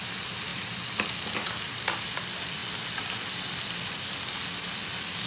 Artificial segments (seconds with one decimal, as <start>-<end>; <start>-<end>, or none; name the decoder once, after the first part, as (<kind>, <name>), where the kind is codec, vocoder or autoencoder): none